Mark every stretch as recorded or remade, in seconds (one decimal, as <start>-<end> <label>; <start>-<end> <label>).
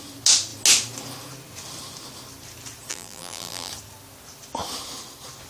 0.0-2.9 recorded; 2.9-3.7 remade; 3.7-5.5 recorded